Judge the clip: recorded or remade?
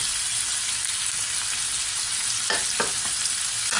recorded